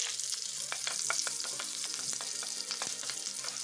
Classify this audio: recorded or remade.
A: recorded